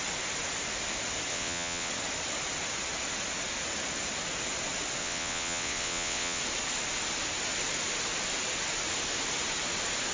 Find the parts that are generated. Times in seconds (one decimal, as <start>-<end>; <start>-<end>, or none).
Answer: 1.3-1.9; 5.0-6.4